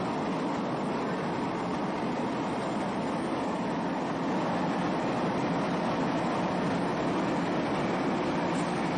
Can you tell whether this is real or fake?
real